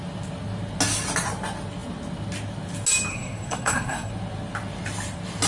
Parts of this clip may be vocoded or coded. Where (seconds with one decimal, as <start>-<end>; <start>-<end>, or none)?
3.1-4.1